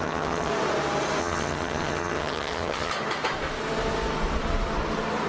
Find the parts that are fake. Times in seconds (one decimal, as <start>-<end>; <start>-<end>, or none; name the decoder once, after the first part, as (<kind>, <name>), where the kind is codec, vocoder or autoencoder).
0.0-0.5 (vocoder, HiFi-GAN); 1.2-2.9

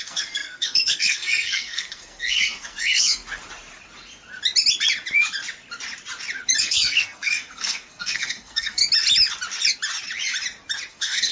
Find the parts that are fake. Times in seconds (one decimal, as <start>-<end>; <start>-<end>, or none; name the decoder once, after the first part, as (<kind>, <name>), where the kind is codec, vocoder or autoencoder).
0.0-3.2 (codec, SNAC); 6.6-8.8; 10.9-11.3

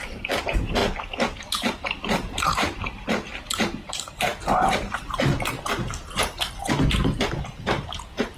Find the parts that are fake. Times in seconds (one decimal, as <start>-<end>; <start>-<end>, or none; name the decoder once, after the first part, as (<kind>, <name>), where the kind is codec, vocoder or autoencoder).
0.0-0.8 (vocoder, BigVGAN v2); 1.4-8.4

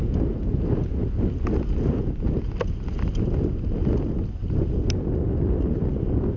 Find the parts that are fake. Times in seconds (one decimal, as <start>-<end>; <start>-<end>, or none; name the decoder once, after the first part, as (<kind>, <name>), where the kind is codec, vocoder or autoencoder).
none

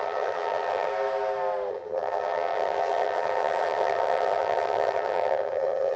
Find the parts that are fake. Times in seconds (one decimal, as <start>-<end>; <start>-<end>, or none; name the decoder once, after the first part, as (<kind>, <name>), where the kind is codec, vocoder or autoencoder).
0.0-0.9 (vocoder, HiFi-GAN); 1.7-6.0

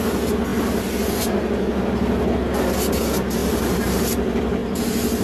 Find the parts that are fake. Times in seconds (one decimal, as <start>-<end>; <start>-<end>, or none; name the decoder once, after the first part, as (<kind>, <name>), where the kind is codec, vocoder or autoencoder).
3.4-4.0 (vocoder, BigVGAN v2)

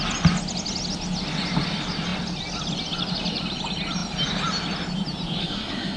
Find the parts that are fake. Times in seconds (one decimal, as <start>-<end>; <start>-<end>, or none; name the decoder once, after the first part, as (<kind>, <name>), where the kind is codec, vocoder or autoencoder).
5.4-6.0 (codec, SNAC)

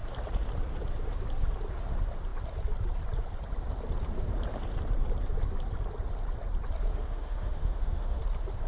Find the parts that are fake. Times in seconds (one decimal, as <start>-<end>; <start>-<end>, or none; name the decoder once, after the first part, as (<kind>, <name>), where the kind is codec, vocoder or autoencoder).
6.9-8.2 (autoencoder, DAC-VAE)